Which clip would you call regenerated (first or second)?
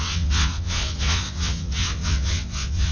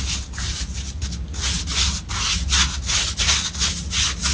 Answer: first